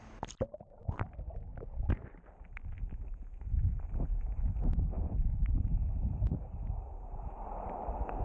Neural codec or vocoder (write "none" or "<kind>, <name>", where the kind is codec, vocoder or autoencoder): none